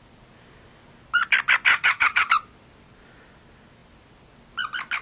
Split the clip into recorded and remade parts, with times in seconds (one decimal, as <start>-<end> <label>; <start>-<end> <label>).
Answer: 0.0-1.7 recorded; 1.7-2.3 remade; 2.3-5.0 recorded

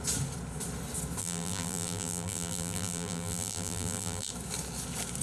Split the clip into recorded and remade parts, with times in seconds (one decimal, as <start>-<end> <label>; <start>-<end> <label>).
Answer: 0.0-1.2 recorded; 1.2-4.3 remade; 4.3-5.2 recorded

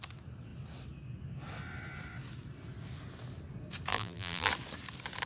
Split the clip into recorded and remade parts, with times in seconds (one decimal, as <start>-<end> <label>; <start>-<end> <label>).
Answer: 0.0-3.9 recorded; 3.9-4.5 remade; 4.5-5.3 recorded

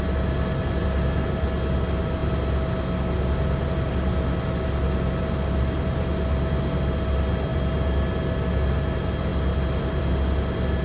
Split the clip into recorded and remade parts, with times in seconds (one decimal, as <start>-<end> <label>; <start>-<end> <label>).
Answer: 0.0-10.8 recorded

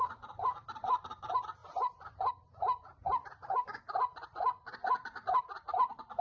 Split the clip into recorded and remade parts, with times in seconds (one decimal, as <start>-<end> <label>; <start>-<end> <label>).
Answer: 0.0-6.2 recorded

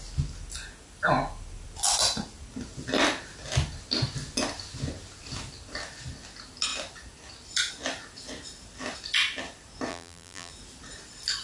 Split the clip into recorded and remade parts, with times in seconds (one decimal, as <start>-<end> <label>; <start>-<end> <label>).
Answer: 0.0-9.9 recorded; 9.9-10.5 remade; 10.5-11.4 recorded

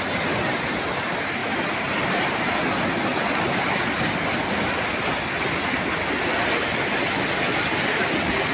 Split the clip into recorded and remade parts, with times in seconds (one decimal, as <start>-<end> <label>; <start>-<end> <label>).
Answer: 0.0-1.4 recorded; 1.4-2.4 remade; 2.4-8.5 recorded

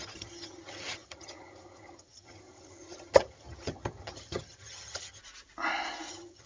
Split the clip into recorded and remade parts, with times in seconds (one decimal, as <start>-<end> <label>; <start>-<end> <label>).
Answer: 0.0-5.2 remade; 5.2-6.1 recorded; 6.1-6.5 remade